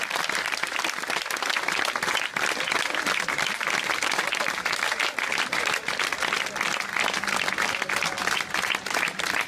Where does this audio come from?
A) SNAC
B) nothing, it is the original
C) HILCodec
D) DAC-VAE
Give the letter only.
B